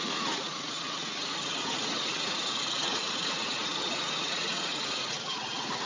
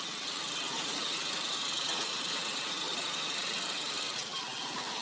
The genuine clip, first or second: second